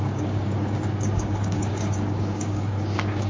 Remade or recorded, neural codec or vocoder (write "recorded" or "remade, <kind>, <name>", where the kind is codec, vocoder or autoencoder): remade, codec, DAC